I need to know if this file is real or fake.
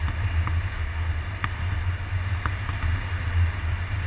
real